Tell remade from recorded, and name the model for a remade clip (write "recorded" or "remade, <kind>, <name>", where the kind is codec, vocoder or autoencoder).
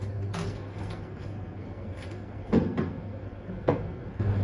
remade, codec, SNAC